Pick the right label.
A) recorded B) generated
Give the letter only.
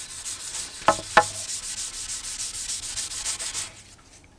A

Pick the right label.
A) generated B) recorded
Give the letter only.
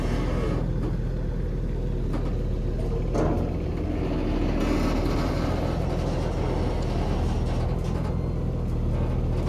B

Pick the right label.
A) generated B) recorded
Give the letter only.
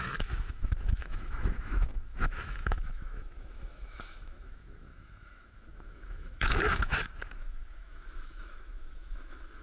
A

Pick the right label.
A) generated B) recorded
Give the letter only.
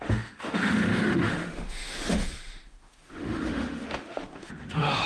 A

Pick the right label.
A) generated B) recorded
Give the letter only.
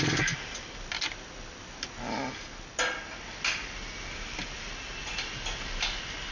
B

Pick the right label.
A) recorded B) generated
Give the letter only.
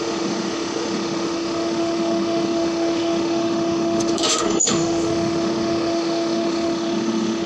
B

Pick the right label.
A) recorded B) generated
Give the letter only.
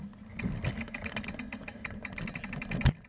A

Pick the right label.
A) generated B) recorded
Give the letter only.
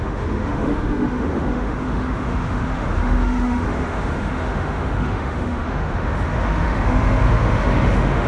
A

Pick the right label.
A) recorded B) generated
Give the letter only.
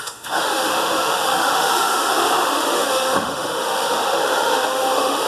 B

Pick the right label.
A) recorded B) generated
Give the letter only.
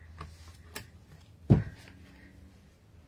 A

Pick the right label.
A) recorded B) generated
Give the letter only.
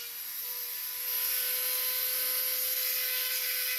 A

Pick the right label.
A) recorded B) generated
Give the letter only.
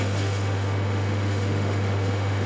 B